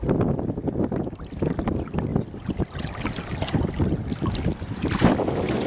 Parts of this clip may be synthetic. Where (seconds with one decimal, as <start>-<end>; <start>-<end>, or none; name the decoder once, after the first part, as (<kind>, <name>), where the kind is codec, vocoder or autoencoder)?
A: none